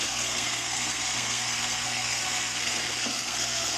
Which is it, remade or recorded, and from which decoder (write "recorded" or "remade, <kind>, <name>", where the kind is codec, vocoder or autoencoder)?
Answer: remade, codec, SNAC